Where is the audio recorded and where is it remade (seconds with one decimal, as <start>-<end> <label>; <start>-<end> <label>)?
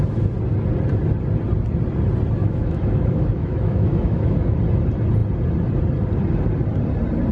0.0-2.4 recorded; 2.4-4.6 remade; 4.6-7.3 recorded